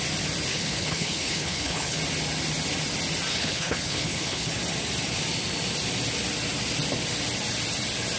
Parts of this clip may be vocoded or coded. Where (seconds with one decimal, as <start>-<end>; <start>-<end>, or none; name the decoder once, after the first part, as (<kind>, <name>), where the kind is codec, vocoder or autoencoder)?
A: 0.5-2.0 (codec, HILCodec); 3.3-4.5